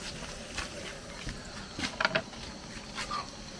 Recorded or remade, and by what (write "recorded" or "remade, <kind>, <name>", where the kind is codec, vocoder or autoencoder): recorded